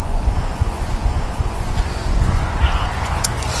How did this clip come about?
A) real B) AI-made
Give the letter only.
B